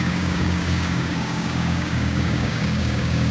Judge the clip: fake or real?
fake